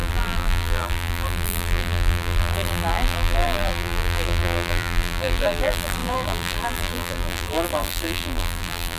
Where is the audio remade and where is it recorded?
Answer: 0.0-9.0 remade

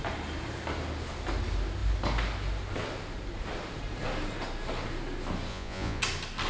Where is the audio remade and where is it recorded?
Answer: 0.0-5.5 recorded; 5.5-6.0 remade; 6.0-6.5 recorded

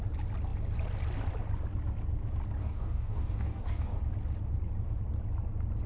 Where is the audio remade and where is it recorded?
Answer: 0.0-2.6 recorded; 2.6-4.0 remade; 4.0-5.9 recorded

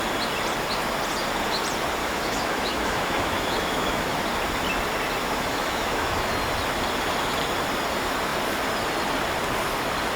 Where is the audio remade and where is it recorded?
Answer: 0.0-2.0 recorded; 2.0-4.2 remade; 4.2-5.2 recorded; 5.2-6.3 remade; 6.3-10.2 recorded

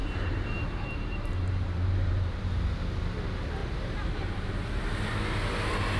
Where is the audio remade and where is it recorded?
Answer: 0.0-2.5 remade; 2.5-3.6 recorded; 3.6-4.8 remade; 4.8-6.0 recorded

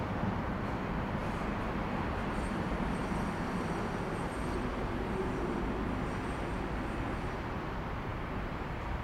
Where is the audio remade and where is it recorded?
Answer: 0.0-3.0 remade; 3.0-7.5 recorded; 7.5-9.0 remade

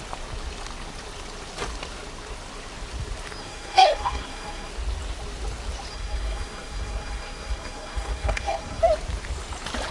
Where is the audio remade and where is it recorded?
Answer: 0.0-3.4 recorded; 3.4-4.7 remade; 4.7-5.9 recorded; 5.9-8.8 remade; 8.8-9.9 recorded